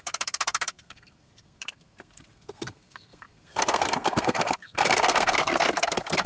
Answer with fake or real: fake